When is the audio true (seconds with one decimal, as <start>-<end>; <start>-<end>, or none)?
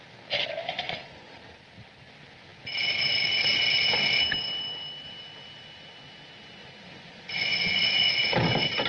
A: 0.0-0.6; 1.3-6.6; 8.1-8.9